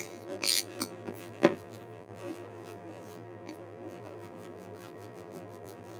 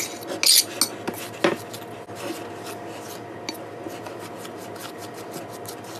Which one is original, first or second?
second